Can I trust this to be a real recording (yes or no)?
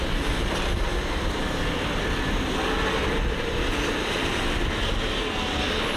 yes